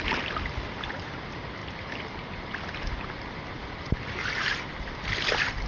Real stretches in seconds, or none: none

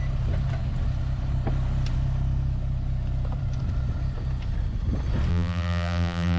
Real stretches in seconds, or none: 0.0-5.3

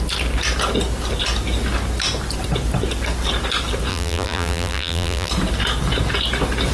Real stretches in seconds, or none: 0.0-3.9; 5.3-6.7